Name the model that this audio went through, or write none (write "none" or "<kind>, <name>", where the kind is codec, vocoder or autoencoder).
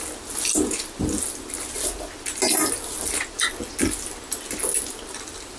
none